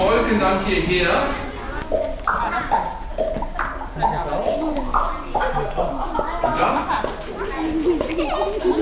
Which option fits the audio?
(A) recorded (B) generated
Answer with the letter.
A